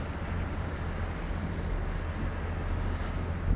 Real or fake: real